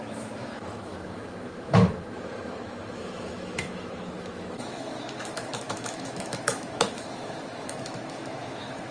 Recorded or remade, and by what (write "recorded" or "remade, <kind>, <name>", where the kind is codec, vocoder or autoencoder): remade, autoencoder, DAC-VAE